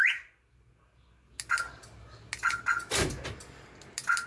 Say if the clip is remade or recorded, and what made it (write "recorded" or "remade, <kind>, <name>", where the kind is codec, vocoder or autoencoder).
recorded